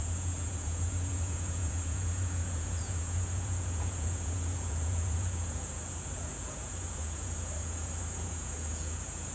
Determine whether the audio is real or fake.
fake